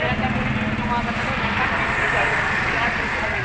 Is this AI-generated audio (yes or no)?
no